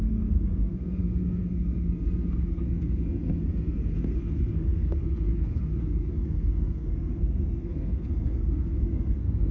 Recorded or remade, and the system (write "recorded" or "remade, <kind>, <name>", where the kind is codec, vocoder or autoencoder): remade, codec, SNAC